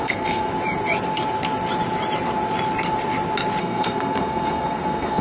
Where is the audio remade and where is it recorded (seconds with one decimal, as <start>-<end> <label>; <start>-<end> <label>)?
0.0-0.5 remade; 0.5-3.6 recorded; 3.6-5.2 remade